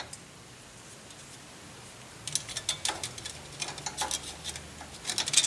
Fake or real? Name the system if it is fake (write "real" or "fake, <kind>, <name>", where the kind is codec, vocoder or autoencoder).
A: real